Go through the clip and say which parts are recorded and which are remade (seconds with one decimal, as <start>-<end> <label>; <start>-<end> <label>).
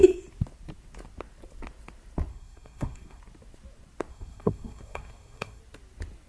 0.0-2.3 recorded; 2.3-3.2 remade; 3.2-4.1 recorded; 4.1-5.6 remade; 5.6-6.3 recorded